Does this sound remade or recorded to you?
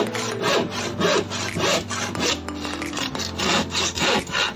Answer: recorded